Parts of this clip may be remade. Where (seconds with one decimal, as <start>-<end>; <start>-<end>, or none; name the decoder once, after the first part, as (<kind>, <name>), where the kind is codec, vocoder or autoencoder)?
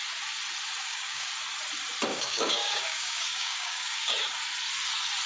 0.8-1.3 (codec, DAC); 2.1-4.1